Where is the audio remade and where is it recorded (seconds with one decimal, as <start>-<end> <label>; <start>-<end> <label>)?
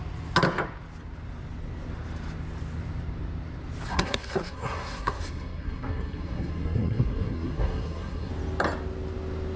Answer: 0.0-3.9 recorded; 3.9-8.3 remade; 8.3-9.6 recorded